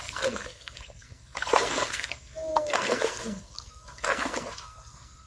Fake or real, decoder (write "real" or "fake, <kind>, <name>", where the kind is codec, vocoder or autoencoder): fake, codec, SNAC